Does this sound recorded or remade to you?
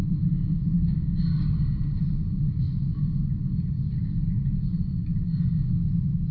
recorded